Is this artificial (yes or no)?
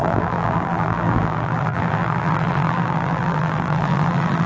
yes